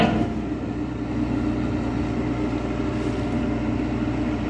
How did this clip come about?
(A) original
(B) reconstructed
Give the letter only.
A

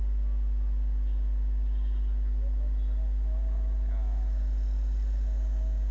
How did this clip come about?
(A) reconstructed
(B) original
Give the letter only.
B